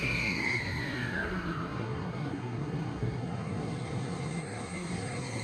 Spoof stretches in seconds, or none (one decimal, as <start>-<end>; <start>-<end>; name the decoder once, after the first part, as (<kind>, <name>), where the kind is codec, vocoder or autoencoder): 0.0-5.4 (codec, SNAC)